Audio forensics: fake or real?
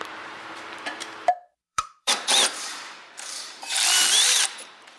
fake